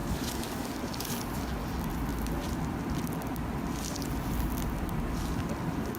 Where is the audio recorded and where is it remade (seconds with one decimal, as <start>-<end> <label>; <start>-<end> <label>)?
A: 0.0-0.8 remade; 0.8-6.0 recorded